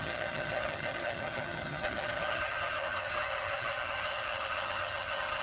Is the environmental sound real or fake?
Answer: fake